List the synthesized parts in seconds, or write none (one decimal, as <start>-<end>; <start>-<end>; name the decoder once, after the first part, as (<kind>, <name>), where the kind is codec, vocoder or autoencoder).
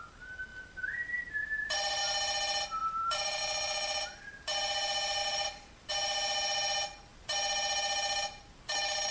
0.5-2.0 (vocoder, BigVGAN v2); 2.8-3.4; 5.2-5.9